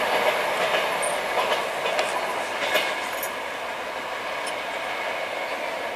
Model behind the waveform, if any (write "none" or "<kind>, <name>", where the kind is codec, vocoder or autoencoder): none